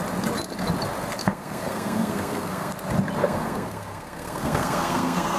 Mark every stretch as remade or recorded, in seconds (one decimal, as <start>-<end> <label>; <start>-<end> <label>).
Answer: 0.0-1.2 recorded; 1.2-2.7 remade; 2.7-3.2 recorded; 3.2-5.4 remade